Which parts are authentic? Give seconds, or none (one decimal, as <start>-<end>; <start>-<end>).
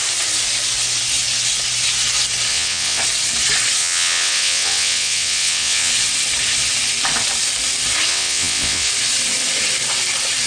0.0-2.5; 3.0-3.8; 5.9-8.1; 8.9-10.5